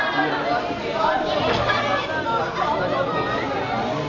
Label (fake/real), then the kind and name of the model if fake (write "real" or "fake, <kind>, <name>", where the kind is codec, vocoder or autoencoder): real